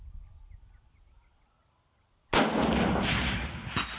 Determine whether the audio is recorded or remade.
recorded